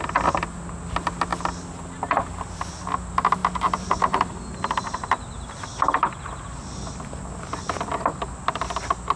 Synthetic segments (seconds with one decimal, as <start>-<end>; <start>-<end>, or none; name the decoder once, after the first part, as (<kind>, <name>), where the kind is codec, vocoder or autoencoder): none

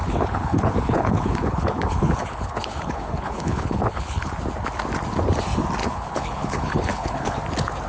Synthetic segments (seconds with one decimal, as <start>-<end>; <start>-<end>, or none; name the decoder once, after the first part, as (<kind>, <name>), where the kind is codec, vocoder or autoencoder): 0.0-4.3 (codec, HILCodec); 5.8-7.4

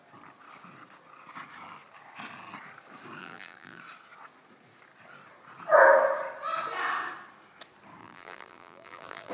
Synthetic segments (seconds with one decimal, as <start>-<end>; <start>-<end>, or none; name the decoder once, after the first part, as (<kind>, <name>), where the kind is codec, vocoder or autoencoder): 3.2-3.8 (vocoder, BigVGAN v2); 8.0-9.3